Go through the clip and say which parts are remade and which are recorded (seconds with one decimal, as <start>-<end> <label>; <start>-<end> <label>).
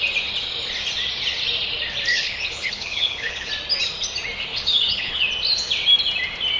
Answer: 0.0-2.1 recorded; 2.1-3.5 remade; 3.5-4.5 recorded; 4.5-5.2 remade; 5.2-6.6 recorded